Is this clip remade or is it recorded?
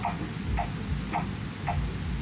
recorded